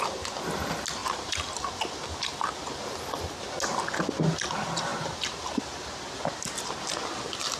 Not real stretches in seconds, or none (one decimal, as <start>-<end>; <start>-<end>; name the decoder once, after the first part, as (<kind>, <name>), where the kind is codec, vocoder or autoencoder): 1.0-1.5 (vocoder, BigVGAN v2)

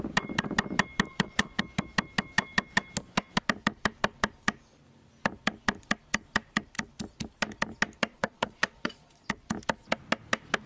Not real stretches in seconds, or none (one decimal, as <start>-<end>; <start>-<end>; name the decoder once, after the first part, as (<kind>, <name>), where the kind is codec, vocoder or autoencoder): 1.1-1.6 (vocoder, Vocos); 8.1-9.3

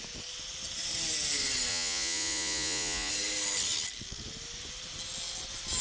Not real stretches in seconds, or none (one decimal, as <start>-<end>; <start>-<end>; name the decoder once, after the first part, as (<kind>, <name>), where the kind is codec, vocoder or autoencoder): 1.7-3.1 (vocoder, Vocos)